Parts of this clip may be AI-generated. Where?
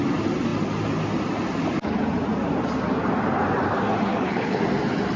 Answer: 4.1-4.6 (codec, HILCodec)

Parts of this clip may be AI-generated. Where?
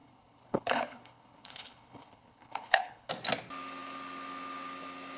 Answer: 0.0-3.1 (codec, HILCodec)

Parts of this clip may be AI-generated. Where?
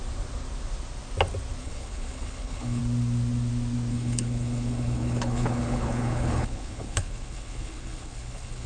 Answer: 1.6-2.8 (codec, HILCodec); 3.9-8.7